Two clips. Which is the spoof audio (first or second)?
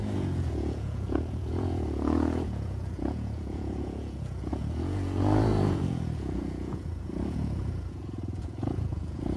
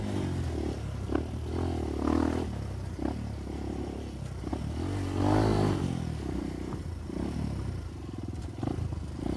first